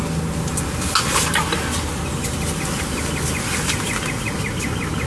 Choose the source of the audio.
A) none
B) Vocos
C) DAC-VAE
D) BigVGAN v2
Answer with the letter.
A